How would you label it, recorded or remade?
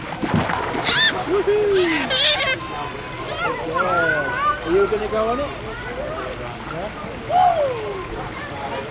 recorded